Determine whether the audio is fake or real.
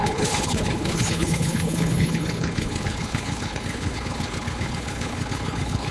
fake